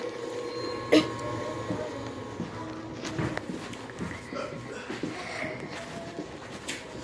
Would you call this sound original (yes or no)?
yes